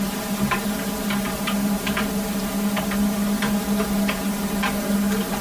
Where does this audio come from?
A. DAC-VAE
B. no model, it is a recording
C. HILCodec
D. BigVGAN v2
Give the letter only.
B